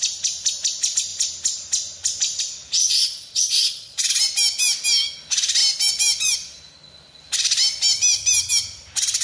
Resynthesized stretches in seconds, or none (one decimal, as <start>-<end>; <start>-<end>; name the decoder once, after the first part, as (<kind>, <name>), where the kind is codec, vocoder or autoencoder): 2.8-4.2 (vocoder, Vocos)

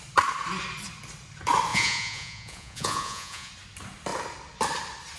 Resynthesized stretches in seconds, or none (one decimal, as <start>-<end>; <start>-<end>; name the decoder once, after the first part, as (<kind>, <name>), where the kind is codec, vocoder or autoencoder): 1.7-3.5 (vocoder, Vocos)

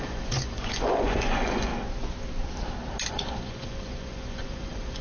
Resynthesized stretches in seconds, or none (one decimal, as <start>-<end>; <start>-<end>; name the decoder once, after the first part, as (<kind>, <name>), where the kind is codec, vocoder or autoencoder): 0.0-1.7 (vocoder, Vocos); 3.1-5.0

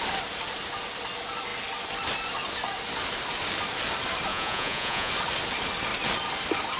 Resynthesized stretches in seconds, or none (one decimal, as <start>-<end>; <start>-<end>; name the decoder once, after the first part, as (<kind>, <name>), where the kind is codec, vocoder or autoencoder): 4.3-5.1 (vocoder, Vocos)

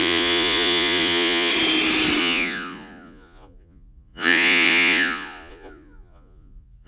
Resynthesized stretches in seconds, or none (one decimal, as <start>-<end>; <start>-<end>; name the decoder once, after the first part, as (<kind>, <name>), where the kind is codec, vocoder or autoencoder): 0.0-1.5 (vocoder, Vocos); 2.2-6.9

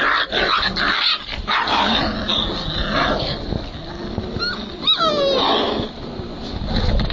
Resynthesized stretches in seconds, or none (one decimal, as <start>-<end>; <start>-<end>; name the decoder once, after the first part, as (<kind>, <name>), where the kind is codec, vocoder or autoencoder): none

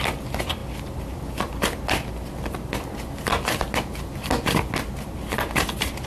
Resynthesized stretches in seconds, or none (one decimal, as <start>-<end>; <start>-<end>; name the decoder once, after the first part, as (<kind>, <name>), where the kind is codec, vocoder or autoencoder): none